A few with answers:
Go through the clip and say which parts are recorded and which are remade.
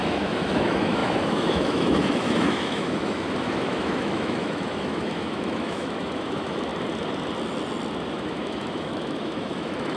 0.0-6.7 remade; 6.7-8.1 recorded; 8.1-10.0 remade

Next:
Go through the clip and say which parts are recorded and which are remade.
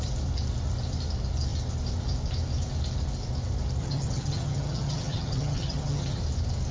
0.0-3.8 recorded; 3.8-6.2 remade; 6.2-6.7 recorded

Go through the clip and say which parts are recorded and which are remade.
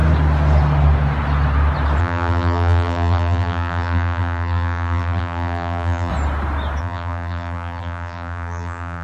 0.0-2.0 recorded; 2.0-6.1 remade; 6.1-6.8 recorded; 6.8-9.0 remade